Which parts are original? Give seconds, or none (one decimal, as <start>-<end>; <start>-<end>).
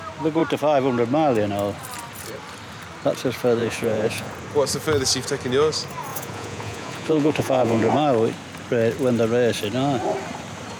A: 0.0-3.6; 4.3-6.1; 7.9-10.8